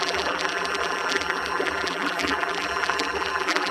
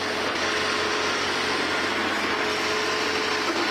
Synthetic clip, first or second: first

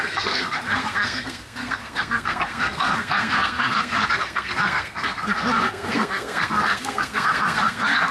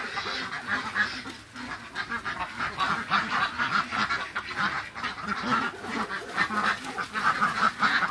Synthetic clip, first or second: first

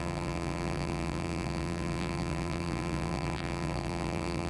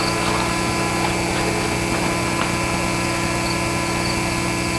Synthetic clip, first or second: first